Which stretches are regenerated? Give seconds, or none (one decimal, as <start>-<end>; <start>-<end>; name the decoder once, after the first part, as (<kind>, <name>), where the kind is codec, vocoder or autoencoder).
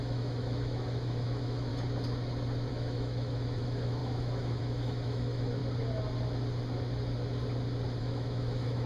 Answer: 0.0-1.7 (autoencoder, DAC-VAE); 2.7-5.6; 8.0-8.9